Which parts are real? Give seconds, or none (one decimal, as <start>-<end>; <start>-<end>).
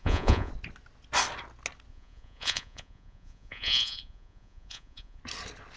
0.5-1.9; 5.2-5.8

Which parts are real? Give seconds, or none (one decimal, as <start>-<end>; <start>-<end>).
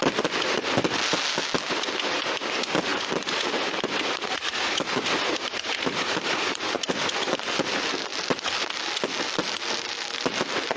0.0-2.9; 6.9-10.8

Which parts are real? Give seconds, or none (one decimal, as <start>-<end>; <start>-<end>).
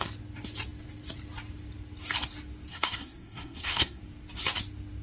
0.0-2.7; 4.0-5.0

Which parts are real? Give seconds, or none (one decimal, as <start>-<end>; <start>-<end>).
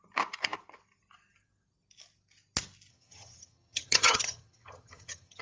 0.0-2.9